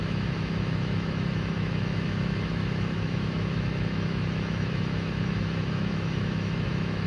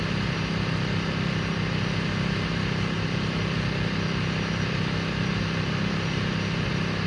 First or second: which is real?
second